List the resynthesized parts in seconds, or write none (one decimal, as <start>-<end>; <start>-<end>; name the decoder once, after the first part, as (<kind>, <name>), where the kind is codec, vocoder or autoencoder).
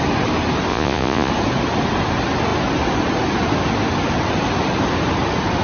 0.7-1.3 (vocoder, Vocos)